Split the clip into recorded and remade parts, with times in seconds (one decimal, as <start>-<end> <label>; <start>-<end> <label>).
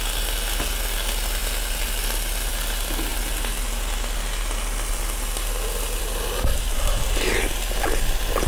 0.0-8.5 recorded